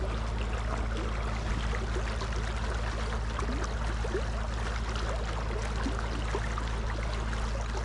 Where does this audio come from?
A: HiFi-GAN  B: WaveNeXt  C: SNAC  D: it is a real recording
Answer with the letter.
D